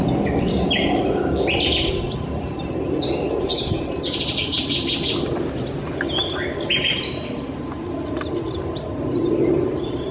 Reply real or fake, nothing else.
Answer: real